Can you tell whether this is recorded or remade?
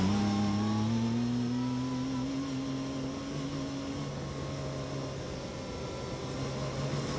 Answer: recorded